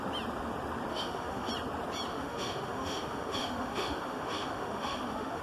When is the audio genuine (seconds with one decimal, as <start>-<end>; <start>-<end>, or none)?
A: 0.0-0.9; 1.5-2.1